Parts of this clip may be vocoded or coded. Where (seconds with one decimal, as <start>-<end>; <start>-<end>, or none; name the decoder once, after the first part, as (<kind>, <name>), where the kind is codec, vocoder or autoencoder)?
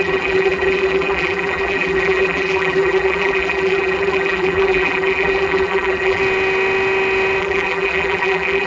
0.0-6.2 (vocoder, BigVGAN v2); 7.4-8.7